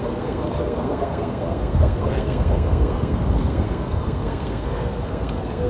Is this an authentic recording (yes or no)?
no